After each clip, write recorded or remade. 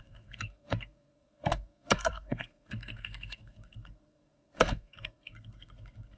remade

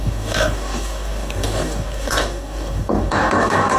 remade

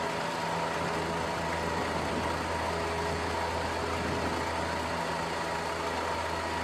recorded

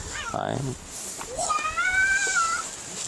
recorded